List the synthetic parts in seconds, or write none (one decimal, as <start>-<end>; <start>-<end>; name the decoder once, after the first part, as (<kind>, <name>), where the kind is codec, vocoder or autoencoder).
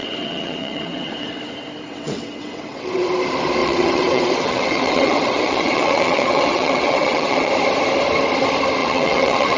0.0-1.4 (vocoder, WaveNeXt); 1.9-3.1; 3.6-7.5; 8.8-9.6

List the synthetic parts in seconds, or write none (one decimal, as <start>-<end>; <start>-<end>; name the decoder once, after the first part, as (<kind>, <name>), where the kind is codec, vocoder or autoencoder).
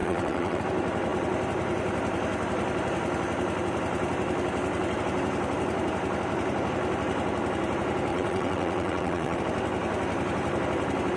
0.0-0.6 (vocoder, WaveNeXt); 8.1-9.4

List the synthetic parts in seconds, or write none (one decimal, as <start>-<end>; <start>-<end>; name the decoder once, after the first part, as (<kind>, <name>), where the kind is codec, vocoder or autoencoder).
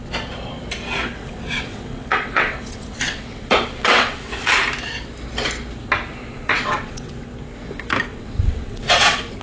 1.2-4.5 (vocoder, WaveNeXt); 6.3-7.1; 8.1-9.4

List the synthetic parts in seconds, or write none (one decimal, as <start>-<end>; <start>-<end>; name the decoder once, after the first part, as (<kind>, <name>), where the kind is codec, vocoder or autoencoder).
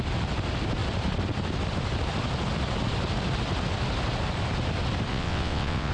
5.1-5.9 (vocoder, WaveNeXt)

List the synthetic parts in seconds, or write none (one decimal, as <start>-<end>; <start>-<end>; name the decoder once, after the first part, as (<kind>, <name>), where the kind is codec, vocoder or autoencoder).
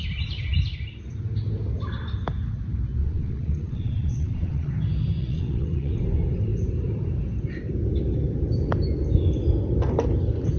3.0-4.7 (vocoder, WaveNeXt); 5.2-5.9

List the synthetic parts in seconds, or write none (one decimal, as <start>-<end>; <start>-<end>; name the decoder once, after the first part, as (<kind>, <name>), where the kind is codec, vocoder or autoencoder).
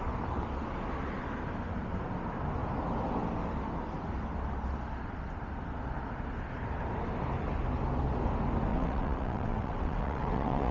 8.7-10.7 (vocoder, WaveNeXt)